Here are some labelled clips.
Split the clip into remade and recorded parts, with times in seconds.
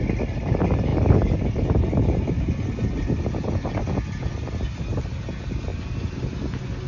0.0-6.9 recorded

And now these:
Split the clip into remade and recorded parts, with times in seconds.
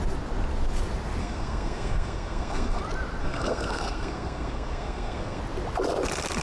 0.0-1.2 recorded; 1.2-2.8 remade; 2.8-3.2 recorded; 3.2-5.4 remade; 5.4-6.4 recorded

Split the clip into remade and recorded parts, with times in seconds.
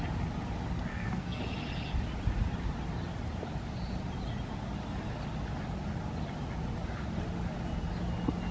0.0-0.9 recorded; 0.9-1.4 remade; 1.4-8.5 recorded